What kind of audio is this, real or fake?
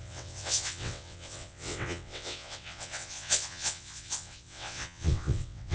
fake